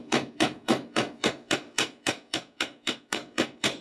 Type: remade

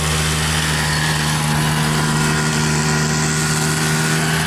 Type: recorded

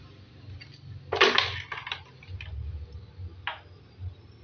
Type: recorded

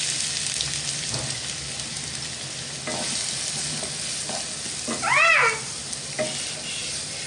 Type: recorded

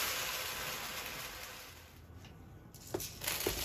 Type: recorded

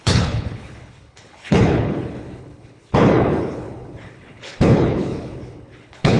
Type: remade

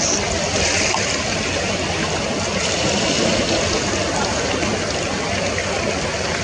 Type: recorded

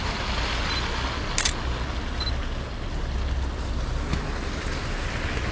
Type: recorded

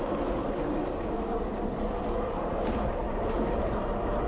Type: recorded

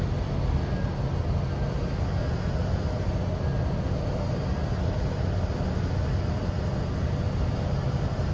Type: recorded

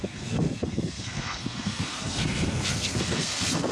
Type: remade